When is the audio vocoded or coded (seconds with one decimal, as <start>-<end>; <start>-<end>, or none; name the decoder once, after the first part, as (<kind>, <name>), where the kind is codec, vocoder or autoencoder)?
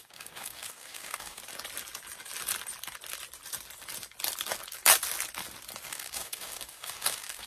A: 0.0-1.4 (codec, DAC); 5.9-7.5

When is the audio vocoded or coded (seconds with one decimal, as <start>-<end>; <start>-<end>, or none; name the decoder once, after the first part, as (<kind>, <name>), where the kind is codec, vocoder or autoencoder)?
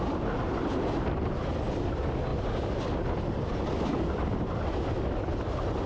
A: none